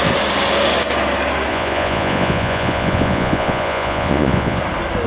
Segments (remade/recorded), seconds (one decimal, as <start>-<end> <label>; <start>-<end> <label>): 0.0-1.5 recorded; 1.5-4.6 remade; 4.6-5.1 recorded